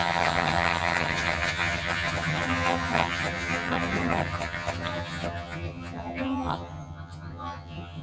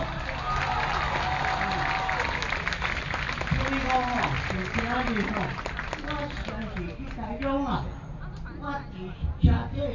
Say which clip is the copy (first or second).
first